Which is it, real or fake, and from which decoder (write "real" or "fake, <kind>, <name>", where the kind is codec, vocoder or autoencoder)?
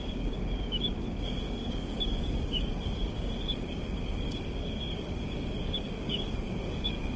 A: fake, codec, DAC